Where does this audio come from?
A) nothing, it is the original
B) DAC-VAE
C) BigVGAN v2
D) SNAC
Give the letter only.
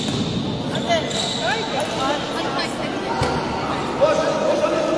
A